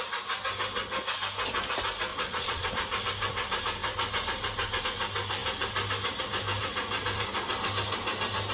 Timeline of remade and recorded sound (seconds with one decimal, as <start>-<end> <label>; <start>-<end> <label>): 0.0-2.1 recorded; 2.1-2.7 remade; 2.7-8.5 recorded